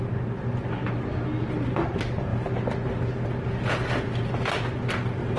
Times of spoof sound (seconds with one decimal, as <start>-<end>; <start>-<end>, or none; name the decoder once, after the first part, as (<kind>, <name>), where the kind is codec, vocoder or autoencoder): none